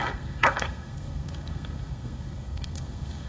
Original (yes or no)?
no